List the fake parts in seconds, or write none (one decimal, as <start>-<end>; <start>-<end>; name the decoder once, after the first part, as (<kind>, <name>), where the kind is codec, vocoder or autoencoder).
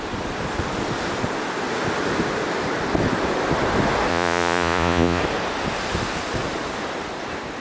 4.1-5.2 (vocoder, Vocos)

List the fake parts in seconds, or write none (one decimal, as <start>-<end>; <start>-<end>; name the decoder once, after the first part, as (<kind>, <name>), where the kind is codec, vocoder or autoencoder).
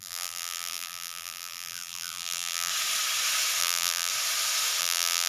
0.0-2.7 (vocoder, BigVGAN v2); 3.6-4.1; 4.8-5.3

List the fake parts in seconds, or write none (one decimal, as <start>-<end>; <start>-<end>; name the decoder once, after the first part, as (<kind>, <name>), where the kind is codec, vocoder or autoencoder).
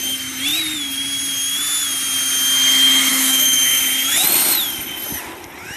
3.1-3.8 (autoencoder, DAC-VAE)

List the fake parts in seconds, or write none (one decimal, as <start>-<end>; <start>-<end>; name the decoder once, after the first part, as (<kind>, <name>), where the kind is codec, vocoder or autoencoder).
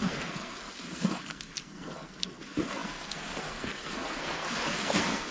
0.0-5.3 (codec, SNAC)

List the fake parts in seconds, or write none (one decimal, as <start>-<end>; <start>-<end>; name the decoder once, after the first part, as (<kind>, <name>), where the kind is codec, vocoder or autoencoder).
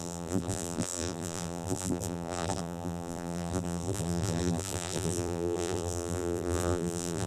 0.0-7.3 (vocoder, BigVGAN v2)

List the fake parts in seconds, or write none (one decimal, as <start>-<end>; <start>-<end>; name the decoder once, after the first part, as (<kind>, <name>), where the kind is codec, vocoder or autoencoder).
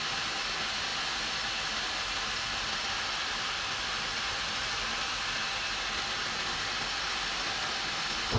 none